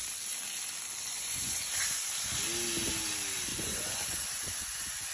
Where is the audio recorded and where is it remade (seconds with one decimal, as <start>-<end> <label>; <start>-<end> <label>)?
0.0-1.1 recorded; 1.1-1.7 remade; 1.7-3.5 recorded; 3.5-5.1 remade